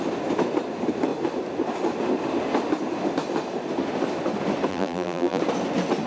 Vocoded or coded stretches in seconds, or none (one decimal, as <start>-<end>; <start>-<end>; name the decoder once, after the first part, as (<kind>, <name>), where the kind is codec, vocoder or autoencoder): 4.7-5.4 (vocoder, BigVGAN v2)